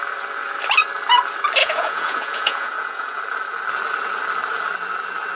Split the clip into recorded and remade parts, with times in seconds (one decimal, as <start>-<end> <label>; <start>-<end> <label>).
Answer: 0.0-1.6 recorded; 1.6-3.2 remade; 3.2-5.3 recorded